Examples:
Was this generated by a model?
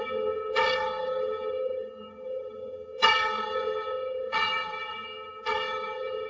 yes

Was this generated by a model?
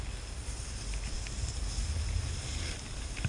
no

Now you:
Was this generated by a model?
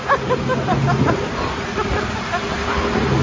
no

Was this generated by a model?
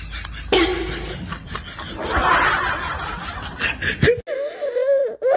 no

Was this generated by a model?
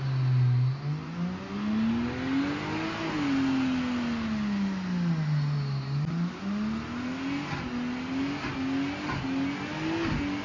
no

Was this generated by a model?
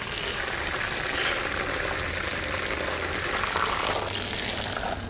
no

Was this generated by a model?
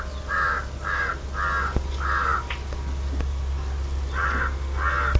no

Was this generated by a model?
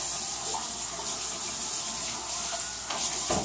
no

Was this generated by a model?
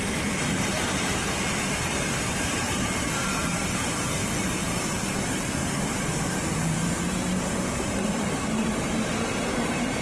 yes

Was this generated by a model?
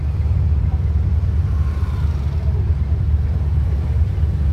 no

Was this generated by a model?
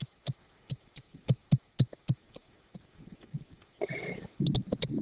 no